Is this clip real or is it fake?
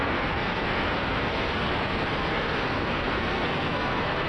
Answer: fake